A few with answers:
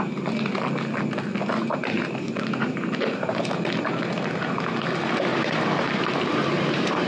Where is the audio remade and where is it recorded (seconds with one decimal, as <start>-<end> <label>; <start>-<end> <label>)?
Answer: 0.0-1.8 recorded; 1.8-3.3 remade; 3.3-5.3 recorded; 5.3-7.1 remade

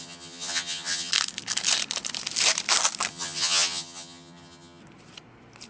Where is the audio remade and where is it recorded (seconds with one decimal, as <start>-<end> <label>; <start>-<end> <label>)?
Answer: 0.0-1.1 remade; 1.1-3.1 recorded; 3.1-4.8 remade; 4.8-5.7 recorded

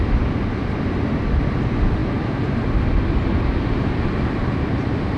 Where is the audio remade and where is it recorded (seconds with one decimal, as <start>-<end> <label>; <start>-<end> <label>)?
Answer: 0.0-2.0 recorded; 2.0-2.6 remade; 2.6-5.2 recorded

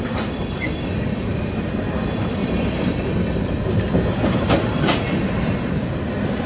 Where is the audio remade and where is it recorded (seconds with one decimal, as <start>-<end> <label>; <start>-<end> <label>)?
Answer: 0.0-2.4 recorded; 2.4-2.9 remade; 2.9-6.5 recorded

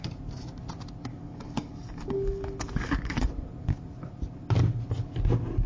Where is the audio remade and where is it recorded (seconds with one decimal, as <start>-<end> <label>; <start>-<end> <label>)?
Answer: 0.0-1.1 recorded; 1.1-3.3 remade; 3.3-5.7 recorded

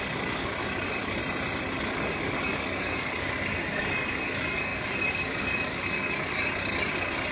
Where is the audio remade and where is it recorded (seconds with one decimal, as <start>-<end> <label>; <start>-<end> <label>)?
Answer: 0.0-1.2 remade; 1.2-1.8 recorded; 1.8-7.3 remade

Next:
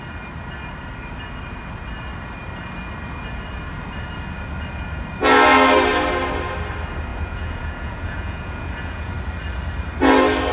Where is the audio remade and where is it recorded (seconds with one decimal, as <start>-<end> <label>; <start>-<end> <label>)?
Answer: 0.0-7.1 recorded; 7.1-9.1 remade; 9.1-10.5 recorded

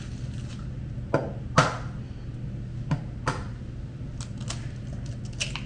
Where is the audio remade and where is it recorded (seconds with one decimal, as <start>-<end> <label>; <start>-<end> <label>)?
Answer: 0.0-5.7 recorded